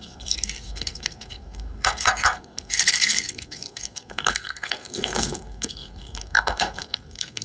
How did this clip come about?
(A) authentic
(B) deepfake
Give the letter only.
B